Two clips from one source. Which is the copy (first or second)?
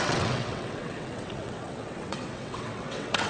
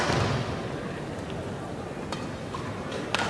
first